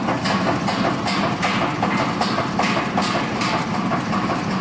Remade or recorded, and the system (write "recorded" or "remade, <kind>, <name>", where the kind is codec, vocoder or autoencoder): recorded